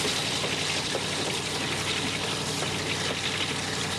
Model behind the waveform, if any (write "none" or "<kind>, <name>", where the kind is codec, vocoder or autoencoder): none